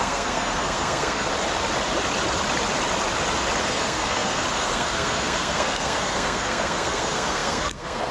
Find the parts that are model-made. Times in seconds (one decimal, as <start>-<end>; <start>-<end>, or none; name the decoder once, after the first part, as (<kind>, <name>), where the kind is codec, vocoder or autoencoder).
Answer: 0.0-1.3 (codec, SNAC); 3.6-8.1